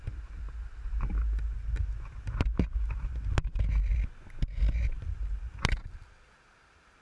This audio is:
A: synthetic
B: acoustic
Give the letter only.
B